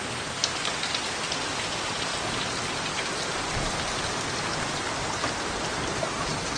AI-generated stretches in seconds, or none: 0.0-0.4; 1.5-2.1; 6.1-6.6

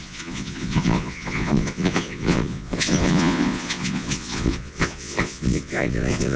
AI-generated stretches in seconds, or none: 0.0-6.4

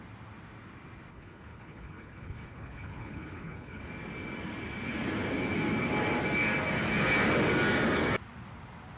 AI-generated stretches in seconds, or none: 1.1-3.8

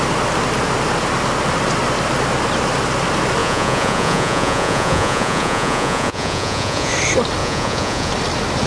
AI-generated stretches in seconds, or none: 3.4-6.9; 7.4-8.1

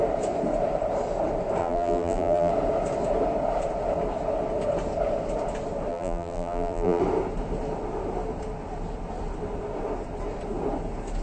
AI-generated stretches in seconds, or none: 1.6-2.5; 5.9-7.0